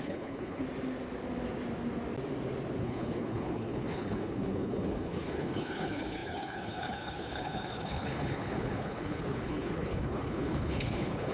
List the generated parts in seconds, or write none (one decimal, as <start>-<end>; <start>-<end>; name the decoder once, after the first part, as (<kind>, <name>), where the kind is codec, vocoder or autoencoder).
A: 0.0-0.6 (codec, HILCodec); 2.8-11.3